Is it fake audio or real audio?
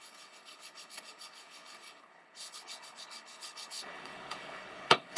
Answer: fake